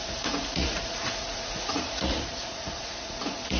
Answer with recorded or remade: remade